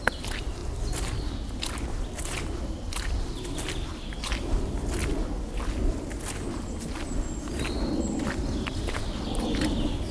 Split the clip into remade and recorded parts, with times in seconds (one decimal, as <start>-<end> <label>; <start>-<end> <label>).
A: 0.0-10.1 recorded